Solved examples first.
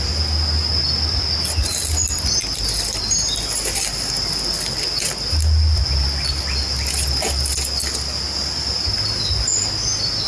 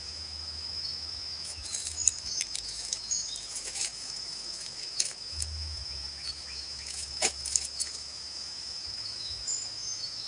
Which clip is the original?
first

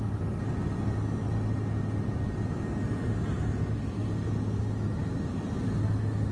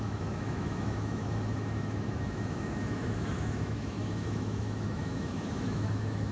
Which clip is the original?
first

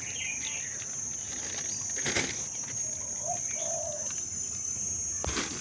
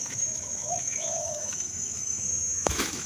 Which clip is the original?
first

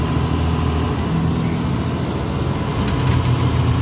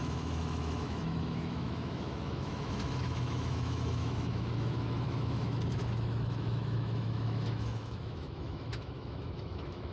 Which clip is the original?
first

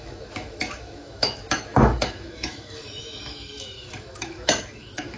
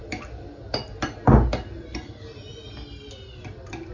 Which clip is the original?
second